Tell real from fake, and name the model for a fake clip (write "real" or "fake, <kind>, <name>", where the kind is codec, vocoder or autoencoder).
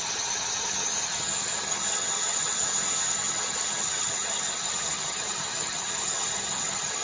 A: fake, vocoder, HiFi-GAN